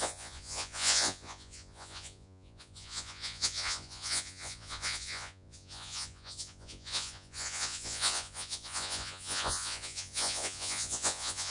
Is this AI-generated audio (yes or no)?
yes